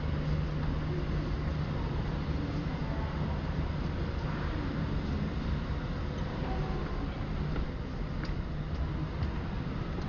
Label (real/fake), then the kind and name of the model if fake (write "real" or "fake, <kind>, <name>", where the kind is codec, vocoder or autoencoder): real